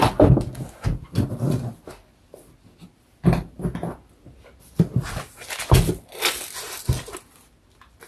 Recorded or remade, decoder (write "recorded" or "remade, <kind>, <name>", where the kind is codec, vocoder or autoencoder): recorded